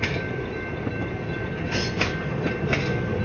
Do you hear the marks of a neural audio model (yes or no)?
no